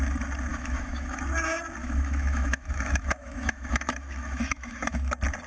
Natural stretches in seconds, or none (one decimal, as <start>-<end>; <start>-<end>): 0.0-0.5; 1.2-1.8; 5.1-5.5